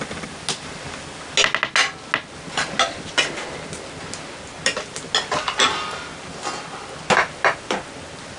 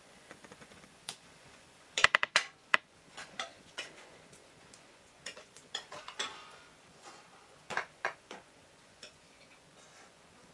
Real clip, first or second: first